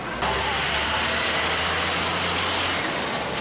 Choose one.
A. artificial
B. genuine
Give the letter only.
B